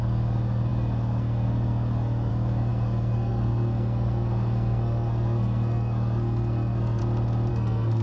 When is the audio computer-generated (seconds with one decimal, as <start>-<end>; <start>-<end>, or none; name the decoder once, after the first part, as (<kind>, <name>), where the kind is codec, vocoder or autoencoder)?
0.0-7.0 (codec, SNAC); 7.5-8.0